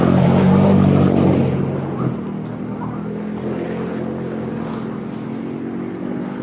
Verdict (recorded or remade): recorded